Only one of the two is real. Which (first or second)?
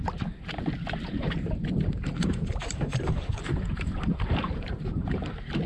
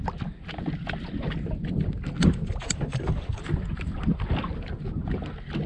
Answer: second